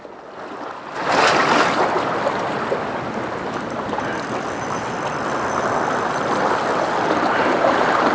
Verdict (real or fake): real